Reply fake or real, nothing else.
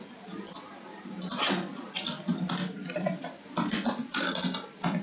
real